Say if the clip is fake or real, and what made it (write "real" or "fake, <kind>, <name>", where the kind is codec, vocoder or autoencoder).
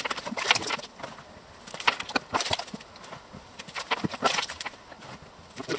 real